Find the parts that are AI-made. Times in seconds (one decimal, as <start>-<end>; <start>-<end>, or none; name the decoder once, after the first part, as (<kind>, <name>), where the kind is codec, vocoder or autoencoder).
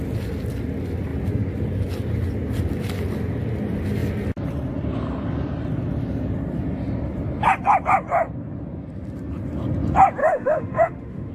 10.2-11.3 (autoencoder, DAC-VAE)